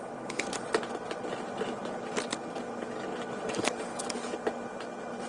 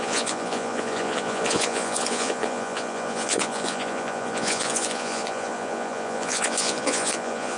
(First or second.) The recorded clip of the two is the first